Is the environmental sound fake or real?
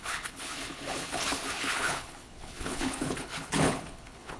fake